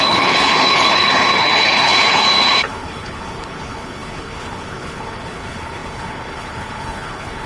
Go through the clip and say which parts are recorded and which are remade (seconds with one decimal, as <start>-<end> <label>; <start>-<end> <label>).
0.0-7.5 remade